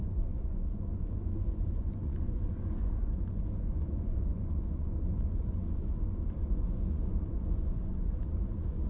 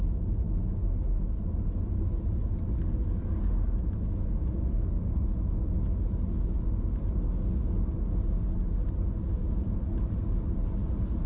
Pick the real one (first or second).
second